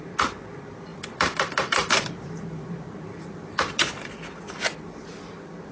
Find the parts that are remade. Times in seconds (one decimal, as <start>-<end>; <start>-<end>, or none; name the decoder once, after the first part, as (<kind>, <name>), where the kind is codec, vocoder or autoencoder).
0.9-4.3 (vocoder, BigVGAN v2)